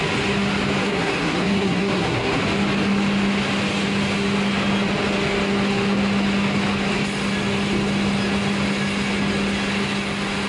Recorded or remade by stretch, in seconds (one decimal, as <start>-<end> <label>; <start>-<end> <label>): 0.0-0.8 recorded; 0.8-2.4 remade; 2.4-10.5 recorded